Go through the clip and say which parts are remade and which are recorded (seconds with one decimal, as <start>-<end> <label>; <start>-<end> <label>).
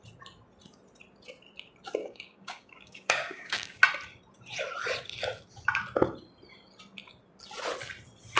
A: 0.0-2.0 recorded; 2.0-3.8 remade; 3.8-8.4 recorded